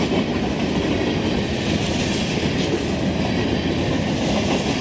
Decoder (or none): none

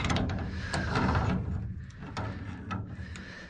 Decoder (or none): none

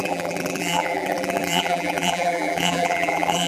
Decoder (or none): vocoder, BigVGAN v2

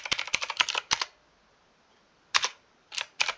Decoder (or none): none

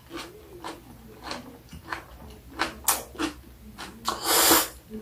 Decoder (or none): none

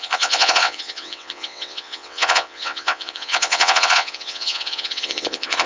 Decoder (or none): vocoder, WaveNeXt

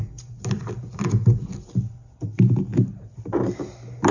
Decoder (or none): none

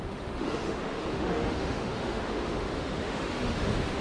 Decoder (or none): autoencoder, DAC-VAE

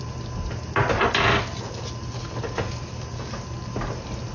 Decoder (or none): none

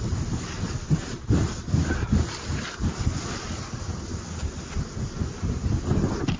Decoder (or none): none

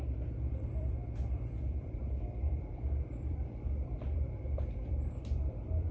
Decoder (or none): vocoder, BigVGAN v2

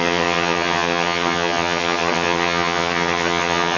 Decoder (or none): vocoder, HiFi-GAN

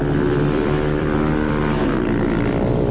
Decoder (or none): vocoder, BigVGAN v2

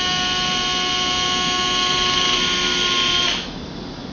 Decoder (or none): none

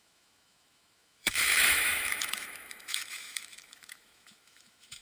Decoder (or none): autoencoder, DAC-VAE